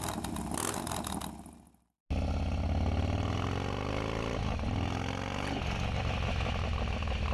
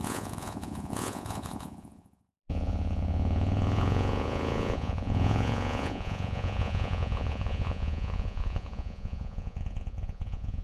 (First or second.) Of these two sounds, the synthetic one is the second